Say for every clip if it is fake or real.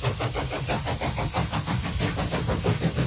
real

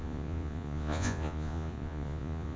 fake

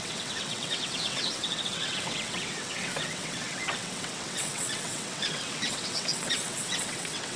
fake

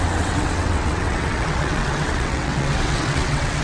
fake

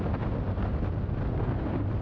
real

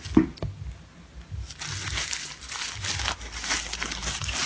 real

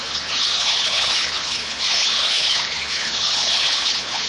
fake